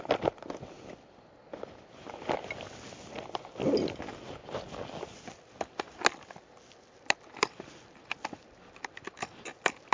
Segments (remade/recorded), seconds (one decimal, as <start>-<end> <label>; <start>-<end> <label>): 0.0-9.9 recorded